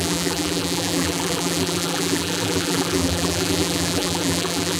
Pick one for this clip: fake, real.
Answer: fake